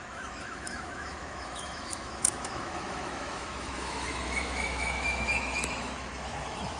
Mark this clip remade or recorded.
remade